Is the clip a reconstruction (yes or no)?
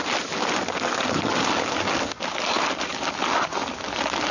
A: no